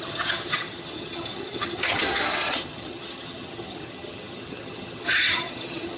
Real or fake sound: fake